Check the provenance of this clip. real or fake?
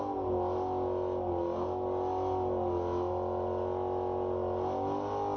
real